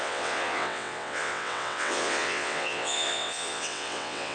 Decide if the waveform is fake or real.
fake